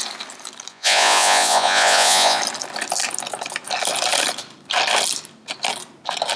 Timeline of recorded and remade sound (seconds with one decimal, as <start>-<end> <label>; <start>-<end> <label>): 0.0-0.7 recorded; 0.7-2.4 remade; 2.4-6.4 recorded